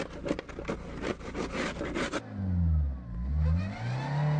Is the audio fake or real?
real